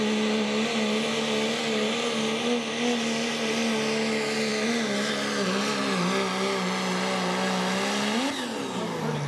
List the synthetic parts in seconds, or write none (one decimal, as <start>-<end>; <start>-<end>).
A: none